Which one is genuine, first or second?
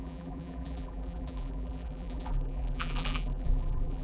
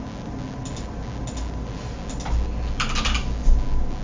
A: second